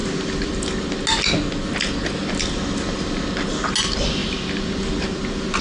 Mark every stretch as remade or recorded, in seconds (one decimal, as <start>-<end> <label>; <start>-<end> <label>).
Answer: 0.0-0.9 remade; 0.9-4.2 recorded; 4.2-5.6 remade